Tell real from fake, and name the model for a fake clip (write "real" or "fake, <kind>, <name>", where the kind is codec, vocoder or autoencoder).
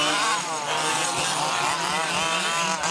real